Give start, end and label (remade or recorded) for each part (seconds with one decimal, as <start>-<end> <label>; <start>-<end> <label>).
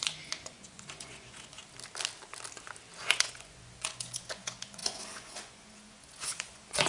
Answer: 0.0-1.6 remade; 1.6-3.0 recorded; 3.0-6.9 remade